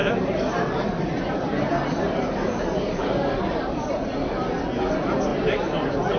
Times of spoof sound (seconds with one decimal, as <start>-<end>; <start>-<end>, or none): 0.0-3.0; 5.3-6.2